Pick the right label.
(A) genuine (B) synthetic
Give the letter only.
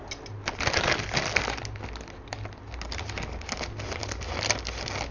A